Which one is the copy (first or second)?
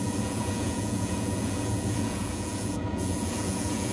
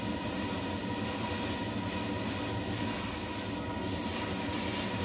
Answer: first